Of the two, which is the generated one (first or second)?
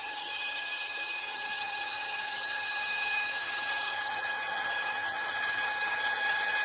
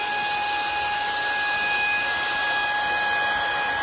first